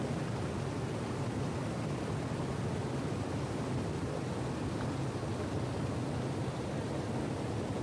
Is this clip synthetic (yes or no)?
no